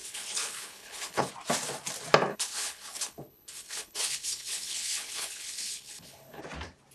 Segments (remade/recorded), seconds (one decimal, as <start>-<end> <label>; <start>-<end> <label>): 0.0-1.3 remade; 1.3-2.3 recorded; 2.3-6.4 remade; 6.4-6.9 recorded